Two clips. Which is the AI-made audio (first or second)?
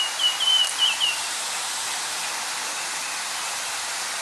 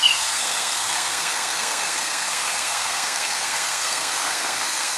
second